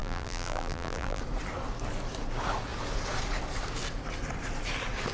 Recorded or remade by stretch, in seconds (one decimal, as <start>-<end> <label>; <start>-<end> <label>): 0.0-1.2 remade; 1.2-5.1 recorded